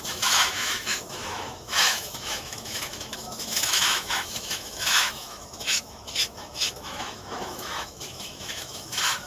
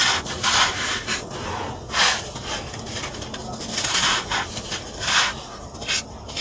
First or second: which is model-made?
first